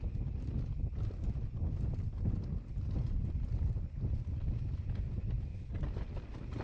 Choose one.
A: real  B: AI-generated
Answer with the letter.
A